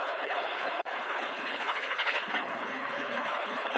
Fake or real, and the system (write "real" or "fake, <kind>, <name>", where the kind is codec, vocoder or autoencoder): fake, codec, HILCodec